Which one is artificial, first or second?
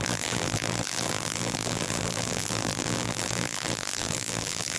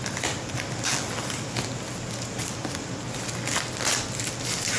first